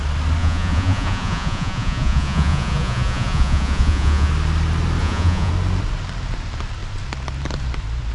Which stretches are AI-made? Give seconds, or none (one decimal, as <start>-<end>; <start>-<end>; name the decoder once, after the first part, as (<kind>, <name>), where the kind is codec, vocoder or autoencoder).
0.4-4.3 (vocoder, Vocos); 5.0-5.5